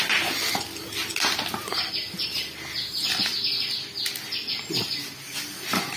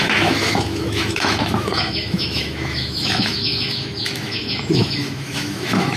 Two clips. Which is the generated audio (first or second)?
second